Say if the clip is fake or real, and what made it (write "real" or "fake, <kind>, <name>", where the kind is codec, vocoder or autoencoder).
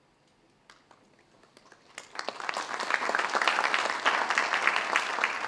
real